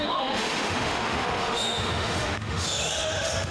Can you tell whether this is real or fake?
fake